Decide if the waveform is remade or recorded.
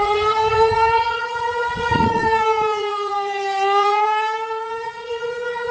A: remade